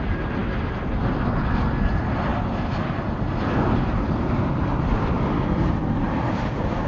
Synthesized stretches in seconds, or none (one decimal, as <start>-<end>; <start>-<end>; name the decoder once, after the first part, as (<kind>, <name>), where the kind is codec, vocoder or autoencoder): 2.3-6.4 (vocoder, BigVGAN v2)

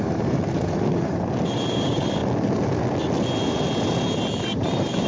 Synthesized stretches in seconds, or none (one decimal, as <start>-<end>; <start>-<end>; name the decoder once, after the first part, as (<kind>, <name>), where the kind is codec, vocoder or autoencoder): 0.0-2.2 (vocoder, BigVGAN v2); 4.4-5.1

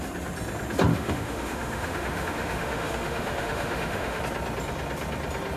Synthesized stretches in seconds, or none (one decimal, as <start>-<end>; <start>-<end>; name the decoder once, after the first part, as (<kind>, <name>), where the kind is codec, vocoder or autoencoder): 0.9-4.2 (autoencoder, DAC-VAE)

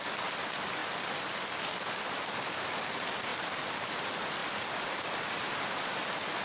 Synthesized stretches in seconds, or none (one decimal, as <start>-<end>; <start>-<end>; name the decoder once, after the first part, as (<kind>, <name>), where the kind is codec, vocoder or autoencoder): 0.0-0.8 (vocoder, BigVGAN v2); 2.9-3.3; 4.0-6.4

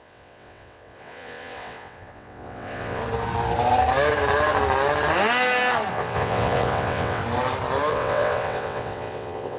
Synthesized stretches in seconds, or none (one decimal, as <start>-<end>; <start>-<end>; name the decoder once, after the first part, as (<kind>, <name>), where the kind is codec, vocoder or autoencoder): 0.0-3.0 (vocoder, WaveNeXt); 5.9-7.2; 7.9-9.6

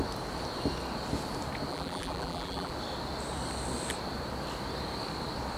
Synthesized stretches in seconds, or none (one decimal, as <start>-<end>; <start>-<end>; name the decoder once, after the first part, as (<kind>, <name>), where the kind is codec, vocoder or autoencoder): 1.7-2.7 (vocoder, BigVGAN v2)